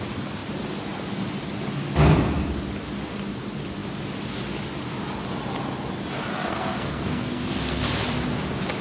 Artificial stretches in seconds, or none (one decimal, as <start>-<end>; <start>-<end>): 6.3-7.9